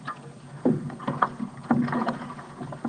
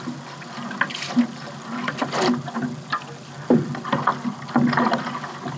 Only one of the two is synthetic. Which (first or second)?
first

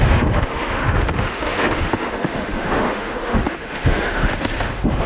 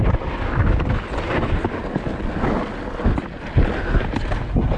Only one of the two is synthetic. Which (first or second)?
first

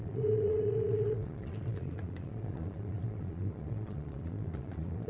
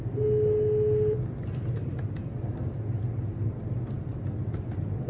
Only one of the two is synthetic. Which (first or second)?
first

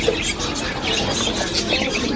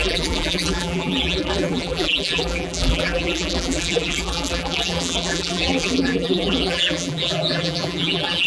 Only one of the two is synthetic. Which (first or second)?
second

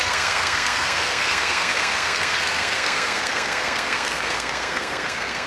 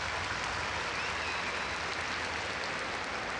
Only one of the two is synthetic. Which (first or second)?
first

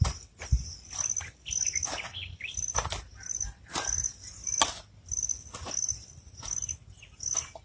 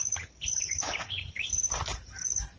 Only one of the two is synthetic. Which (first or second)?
second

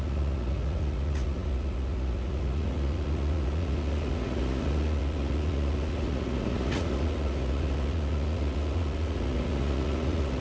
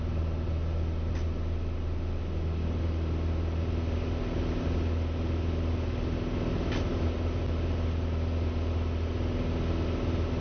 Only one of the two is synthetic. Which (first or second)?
first